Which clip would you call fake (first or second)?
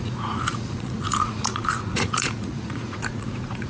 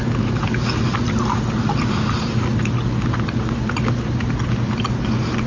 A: first